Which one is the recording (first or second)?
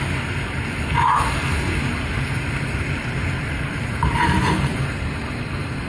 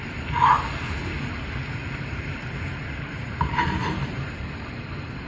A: first